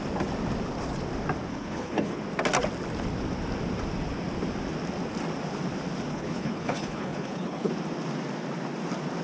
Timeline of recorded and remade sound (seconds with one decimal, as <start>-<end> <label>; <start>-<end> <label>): 0.0-1.5 recorded; 1.5-2.2 remade; 2.2-6.1 recorded; 6.1-7.7 remade; 7.7-9.2 recorded